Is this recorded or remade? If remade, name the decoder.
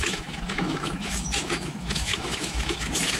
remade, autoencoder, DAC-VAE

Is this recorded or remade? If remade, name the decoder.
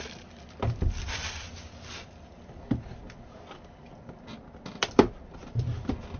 remade, vocoder, BigVGAN v2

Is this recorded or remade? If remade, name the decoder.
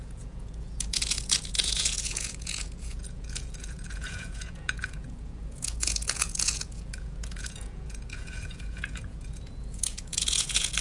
remade, vocoder, Vocos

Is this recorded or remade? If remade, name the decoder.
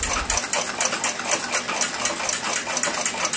recorded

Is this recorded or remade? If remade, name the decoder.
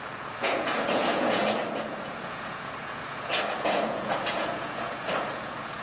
remade, vocoder, Vocos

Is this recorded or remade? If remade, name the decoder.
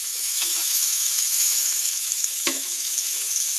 remade, autoencoder, DAC-VAE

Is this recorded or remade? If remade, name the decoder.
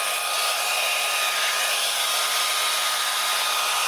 recorded